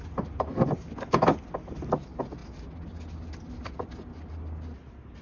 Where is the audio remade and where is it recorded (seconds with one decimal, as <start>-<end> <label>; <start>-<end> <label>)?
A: 0.0-5.2 recorded